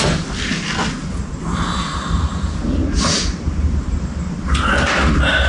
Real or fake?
real